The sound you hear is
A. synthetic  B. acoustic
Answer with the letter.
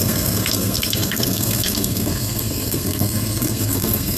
A